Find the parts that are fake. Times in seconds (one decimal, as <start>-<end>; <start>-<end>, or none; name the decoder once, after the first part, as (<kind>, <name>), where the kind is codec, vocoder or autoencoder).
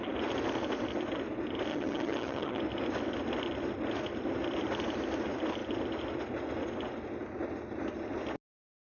1.7-2.6 (vocoder, HiFi-GAN)